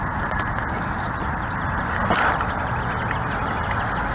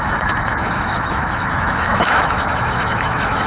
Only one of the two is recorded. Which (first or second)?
first